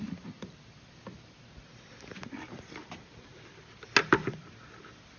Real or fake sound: real